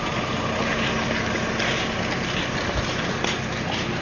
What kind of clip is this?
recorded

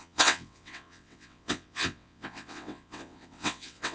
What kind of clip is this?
remade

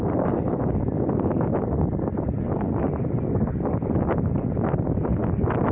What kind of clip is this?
recorded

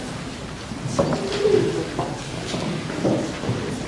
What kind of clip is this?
recorded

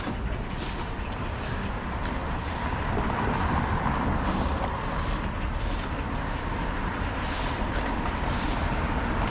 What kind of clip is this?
remade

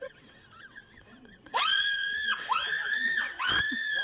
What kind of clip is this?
remade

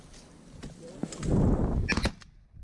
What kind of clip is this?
recorded